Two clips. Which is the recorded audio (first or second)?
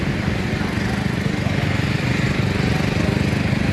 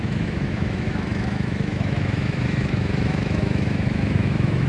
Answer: first